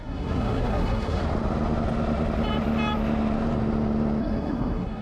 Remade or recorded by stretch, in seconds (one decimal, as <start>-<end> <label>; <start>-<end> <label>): 0.0-1.2 remade; 1.2-4.2 recorded; 4.2-5.0 remade